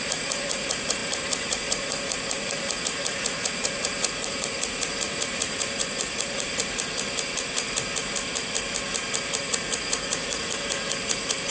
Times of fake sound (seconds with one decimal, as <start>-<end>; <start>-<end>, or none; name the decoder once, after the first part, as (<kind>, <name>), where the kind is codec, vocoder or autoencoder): 0.0-6.6 (vocoder, Vocos); 9.4-11.5